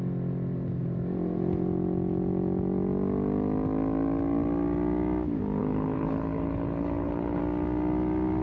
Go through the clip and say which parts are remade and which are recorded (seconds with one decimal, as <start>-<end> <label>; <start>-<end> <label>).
0.0-5.6 recorded; 5.6-7.4 remade; 7.4-8.4 recorded